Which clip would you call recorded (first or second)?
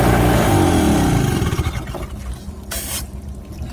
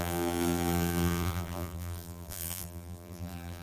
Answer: first